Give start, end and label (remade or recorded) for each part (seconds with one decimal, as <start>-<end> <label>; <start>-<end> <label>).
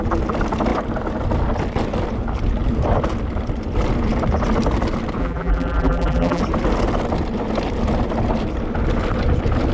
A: 0.0-5.2 recorded; 5.2-6.4 remade; 6.4-9.7 recorded